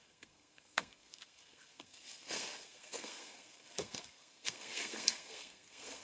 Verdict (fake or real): fake